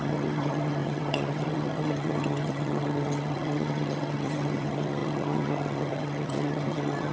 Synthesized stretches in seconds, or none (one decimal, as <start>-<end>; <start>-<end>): 0.0-7.1

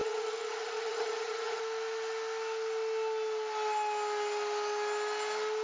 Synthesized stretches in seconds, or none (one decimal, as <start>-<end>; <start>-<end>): 0.0-1.6

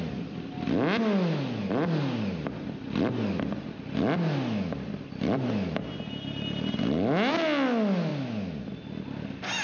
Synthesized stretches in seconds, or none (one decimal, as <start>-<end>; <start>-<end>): none